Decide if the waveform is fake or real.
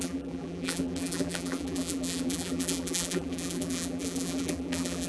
fake